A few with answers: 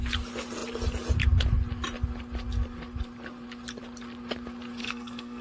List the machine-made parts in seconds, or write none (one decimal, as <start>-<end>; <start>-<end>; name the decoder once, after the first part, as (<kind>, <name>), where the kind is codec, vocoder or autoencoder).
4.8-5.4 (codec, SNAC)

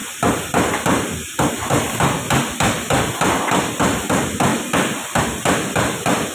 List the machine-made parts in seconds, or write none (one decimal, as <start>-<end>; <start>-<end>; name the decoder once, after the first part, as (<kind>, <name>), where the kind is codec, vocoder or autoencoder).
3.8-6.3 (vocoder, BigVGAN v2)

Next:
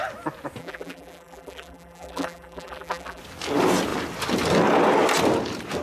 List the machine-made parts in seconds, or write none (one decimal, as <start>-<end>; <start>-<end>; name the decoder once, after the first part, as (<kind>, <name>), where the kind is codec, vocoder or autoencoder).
0.6-3.2 (vocoder, BigVGAN v2)

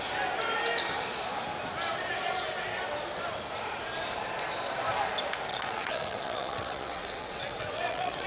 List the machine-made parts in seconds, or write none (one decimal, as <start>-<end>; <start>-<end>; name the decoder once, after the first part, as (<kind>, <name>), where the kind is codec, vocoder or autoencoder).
5.5-8.3 (vocoder, WaveNeXt)

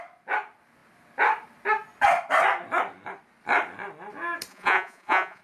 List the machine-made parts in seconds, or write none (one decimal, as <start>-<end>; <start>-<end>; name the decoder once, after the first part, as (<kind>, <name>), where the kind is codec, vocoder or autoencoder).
4.5-5.4 (vocoder, Vocos)

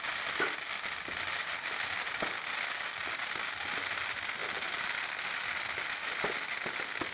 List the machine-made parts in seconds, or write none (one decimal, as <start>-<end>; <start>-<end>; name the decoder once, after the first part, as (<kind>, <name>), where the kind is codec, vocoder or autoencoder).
none